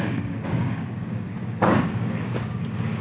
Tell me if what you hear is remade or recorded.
remade